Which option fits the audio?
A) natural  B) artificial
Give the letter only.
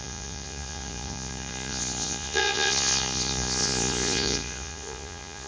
B